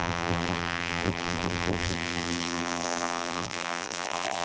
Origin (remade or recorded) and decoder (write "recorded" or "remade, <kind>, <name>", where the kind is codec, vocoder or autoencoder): remade, vocoder, BigVGAN v2